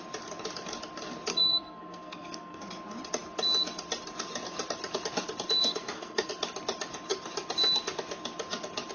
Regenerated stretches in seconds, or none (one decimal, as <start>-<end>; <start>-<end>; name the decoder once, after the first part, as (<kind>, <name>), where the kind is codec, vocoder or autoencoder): 1.3-2.6 (codec, SNAC); 5.6-6.3